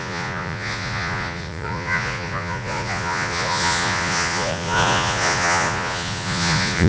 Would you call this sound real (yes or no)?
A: no